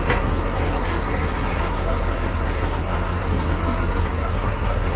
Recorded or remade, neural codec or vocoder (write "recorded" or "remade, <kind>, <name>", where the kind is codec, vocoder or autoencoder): remade, codec, SNAC